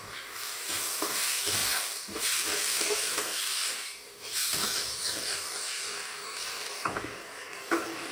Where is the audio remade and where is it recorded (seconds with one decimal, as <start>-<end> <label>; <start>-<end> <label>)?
0.0-8.1 remade